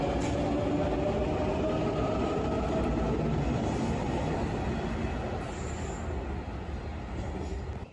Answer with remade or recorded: recorded